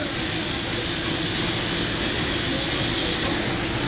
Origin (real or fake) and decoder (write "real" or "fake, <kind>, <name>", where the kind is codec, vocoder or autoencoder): real